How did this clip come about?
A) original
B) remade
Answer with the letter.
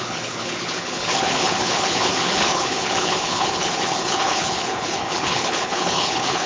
B